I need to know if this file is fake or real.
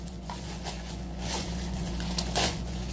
fake